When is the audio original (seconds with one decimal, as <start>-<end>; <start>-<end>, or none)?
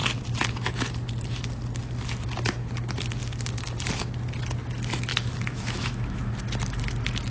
0.0-5.1; 6.3-7.3